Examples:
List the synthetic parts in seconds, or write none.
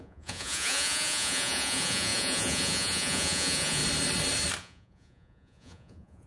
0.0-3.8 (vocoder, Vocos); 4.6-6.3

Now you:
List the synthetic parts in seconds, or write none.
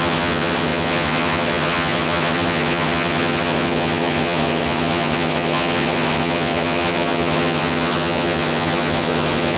0.0-9.6 (vocoder, HiFi-GAN)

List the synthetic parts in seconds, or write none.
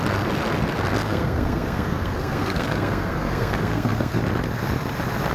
1.0-4.2 (codec, SNAC)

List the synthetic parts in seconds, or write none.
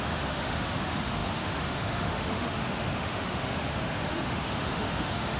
0.0-5.4 (autoencoder, DAC-VAE)